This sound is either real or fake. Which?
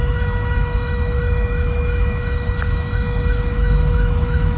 fake